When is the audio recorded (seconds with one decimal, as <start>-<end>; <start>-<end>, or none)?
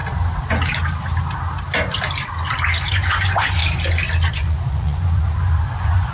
0.0-2.9; 3.6-4.3